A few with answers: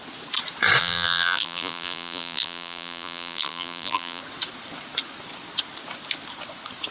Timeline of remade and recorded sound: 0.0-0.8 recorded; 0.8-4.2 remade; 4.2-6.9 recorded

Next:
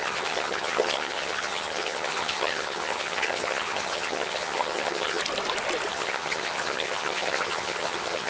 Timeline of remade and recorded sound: 0.0-5.2 remade; 5.2-5.9 recorded; 5.9-8.3 remade

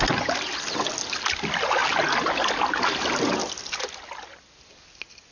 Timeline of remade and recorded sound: 0.0-5.3 recorded